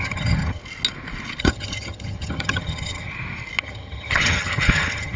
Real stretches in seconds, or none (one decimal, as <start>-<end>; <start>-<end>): 0.6-1.4; 3.1-3.6